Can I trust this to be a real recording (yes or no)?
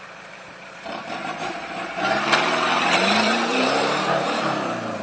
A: no